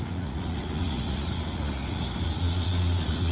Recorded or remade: remade